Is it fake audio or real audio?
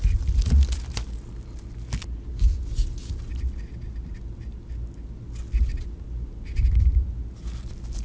real